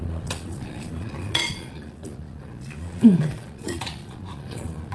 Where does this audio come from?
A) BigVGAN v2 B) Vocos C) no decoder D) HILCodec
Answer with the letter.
B